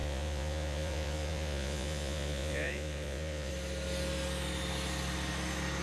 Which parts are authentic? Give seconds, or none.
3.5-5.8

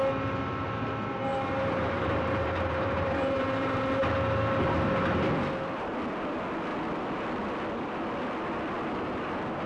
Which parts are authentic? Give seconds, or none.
0.0-1.3; 4.0-9.7

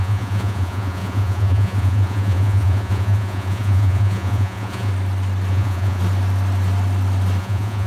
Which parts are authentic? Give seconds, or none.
4.9-5.5; 6.0-7.4

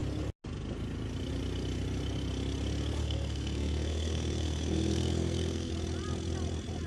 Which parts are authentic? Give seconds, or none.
0.0-3.0; 5.7-6.9